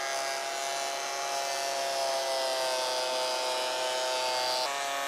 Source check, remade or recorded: recorded